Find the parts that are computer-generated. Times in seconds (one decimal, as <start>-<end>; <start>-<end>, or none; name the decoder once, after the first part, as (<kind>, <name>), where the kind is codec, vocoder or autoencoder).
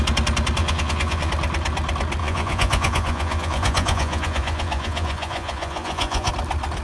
0.6-1.3 (vocoder, Vocos); 2.2-6.3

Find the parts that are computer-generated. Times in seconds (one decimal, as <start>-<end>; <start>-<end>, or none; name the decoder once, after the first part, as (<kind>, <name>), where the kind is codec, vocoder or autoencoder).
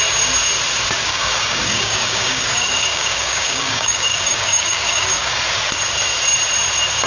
1.1-5.4 (codec, DAC)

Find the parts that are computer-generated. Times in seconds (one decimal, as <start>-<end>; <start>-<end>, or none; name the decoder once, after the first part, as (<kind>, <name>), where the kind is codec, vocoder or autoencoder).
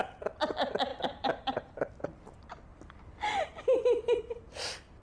0.9-1.9 (vocoder, BigVGAN v2); 2.7-3.4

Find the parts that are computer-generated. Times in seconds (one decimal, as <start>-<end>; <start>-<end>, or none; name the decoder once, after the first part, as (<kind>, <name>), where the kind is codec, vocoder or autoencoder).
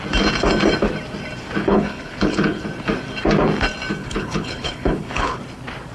1.6-2.6 (codec, HILCodec); 4.0-5.4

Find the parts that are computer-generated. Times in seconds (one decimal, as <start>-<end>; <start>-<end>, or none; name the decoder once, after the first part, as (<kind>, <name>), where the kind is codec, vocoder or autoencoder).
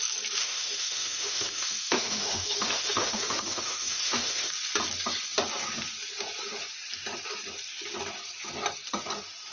0.4-4.5 (autoencoder, DAC-VAE)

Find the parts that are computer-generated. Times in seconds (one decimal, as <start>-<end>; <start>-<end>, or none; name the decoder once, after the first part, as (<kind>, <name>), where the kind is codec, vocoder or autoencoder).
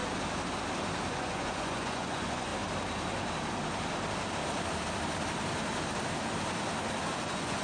1.1-2.5 (vocoder, Vocos); 7.1-7.6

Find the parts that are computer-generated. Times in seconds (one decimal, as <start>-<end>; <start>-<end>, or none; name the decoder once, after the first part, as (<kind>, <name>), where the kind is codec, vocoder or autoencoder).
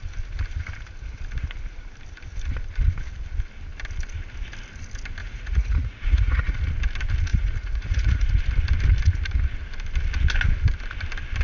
5.2-6.7 (vocoder, Vocos); 7.3-8.4